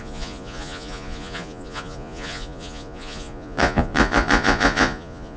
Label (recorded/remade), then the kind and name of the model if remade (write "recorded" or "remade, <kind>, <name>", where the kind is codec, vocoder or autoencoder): remade, vocoder, Vocos